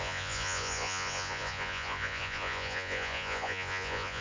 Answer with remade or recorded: remade